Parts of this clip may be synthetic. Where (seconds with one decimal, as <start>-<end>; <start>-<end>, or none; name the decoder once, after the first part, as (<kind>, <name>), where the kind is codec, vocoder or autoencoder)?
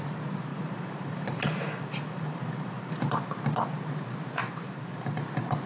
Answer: 0.5-3.3 (vocoder, BigVGAN v2); 4.4-5.2